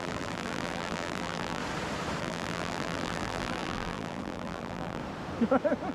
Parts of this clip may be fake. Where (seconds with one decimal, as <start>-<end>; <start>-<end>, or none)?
0.0-1.6; 2.2-5.0